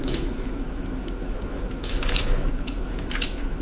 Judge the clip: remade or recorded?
remade